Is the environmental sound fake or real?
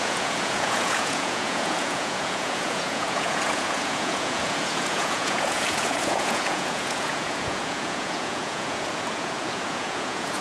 fake